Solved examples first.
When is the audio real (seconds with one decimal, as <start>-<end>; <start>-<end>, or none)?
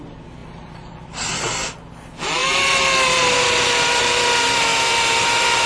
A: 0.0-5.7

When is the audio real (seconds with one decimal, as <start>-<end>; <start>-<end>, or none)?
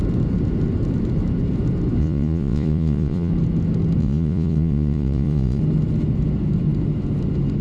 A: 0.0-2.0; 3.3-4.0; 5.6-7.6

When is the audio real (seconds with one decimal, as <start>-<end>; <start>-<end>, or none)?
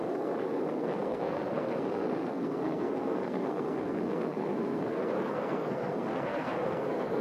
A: none